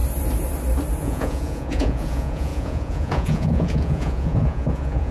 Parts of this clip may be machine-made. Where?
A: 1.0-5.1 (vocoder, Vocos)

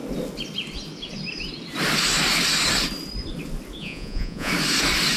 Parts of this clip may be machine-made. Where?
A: 3.8-4.5 (vocoder, Vocos)

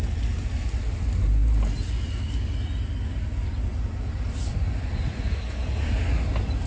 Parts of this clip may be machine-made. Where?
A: none

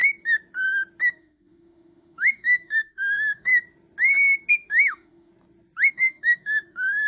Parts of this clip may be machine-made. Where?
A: 1.1-3.5 (autoencoder, DAC-VAE); 4.5-5.3; 5.9-7.1